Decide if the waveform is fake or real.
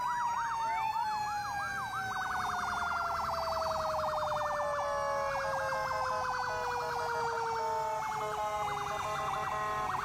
real